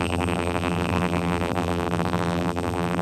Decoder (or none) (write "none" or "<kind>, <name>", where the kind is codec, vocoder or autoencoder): vocoder, BigVGAN v2